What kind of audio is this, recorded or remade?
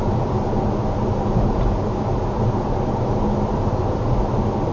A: recorded